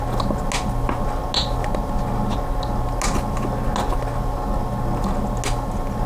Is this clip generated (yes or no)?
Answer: no